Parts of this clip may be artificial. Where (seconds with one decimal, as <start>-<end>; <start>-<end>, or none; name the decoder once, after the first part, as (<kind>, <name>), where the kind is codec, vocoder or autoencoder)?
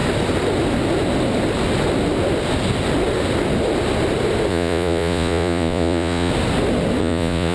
4.5-6.3 (vocoder, Vocos); 7.0-7.5